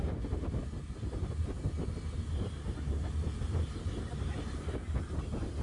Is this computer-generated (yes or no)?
no